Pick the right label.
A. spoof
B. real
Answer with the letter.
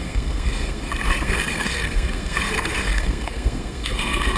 A